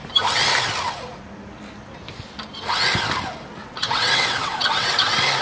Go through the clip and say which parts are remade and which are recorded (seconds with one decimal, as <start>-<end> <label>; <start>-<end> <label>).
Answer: 0.0-3.6 recorded; 3.6-4.9 remade; 4.9-5.4 recorded